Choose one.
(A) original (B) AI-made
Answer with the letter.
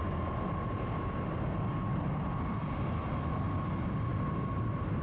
A